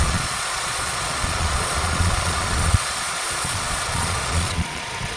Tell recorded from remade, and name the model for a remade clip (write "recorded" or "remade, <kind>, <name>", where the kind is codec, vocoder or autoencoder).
remade, vocoder, Vocos